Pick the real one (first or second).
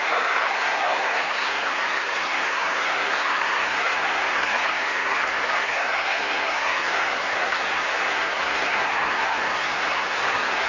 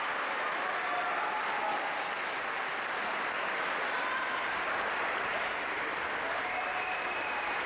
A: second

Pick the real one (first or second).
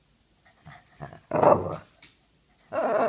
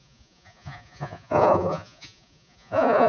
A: first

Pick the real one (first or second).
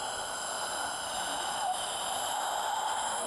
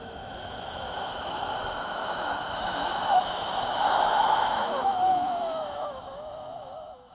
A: first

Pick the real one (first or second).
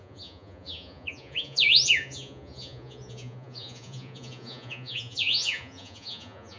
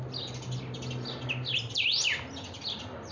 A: second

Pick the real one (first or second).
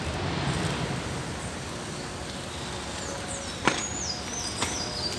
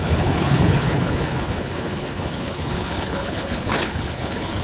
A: first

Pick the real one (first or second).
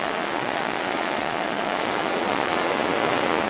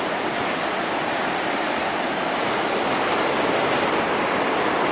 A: second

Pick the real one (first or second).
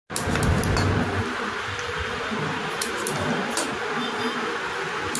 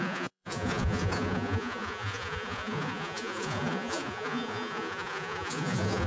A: first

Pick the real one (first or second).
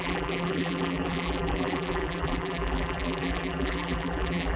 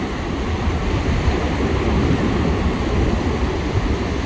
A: second